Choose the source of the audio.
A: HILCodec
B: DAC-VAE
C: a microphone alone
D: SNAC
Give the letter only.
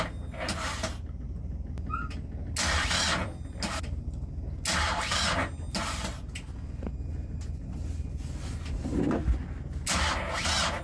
C